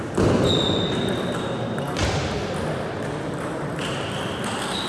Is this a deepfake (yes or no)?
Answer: no